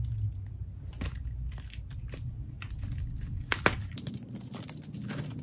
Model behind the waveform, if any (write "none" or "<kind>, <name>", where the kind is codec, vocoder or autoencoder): none